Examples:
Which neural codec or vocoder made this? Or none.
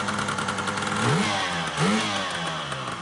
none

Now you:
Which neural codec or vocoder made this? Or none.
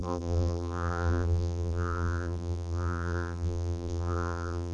vocoder, BigVGAN v2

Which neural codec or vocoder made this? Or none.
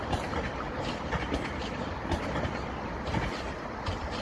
none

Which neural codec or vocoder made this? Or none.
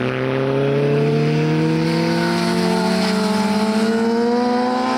none